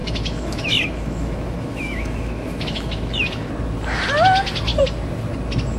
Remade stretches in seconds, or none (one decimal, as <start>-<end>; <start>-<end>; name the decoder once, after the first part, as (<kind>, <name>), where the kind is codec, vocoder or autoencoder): 0.0-3.5 (autoencoder, DAC-VAE)